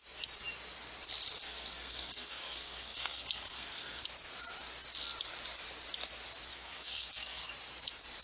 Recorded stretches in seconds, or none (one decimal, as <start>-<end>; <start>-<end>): 0.0-1.3; 4.0-6.5; 7.5-8.2